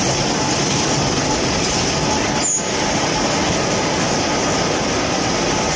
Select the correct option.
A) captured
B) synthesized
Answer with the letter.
A